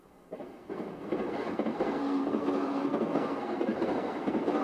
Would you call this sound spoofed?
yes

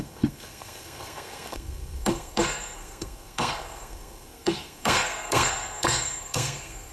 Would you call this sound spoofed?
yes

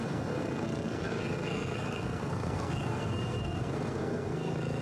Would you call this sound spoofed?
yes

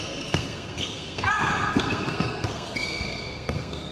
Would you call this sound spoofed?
yes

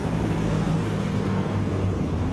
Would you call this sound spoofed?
yes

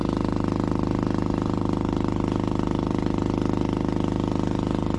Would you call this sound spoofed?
no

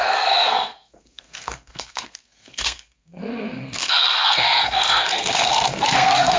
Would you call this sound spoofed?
yes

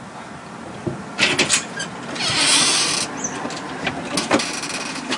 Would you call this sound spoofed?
no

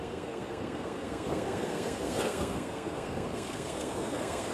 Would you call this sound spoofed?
yes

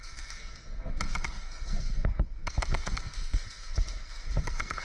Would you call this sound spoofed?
yes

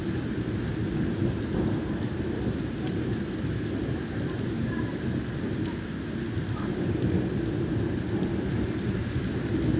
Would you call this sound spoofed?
no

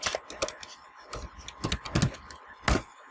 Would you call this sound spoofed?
no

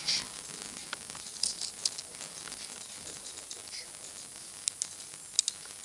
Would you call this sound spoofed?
no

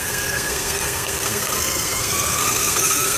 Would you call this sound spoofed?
yes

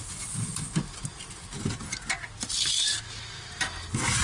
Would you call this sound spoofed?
no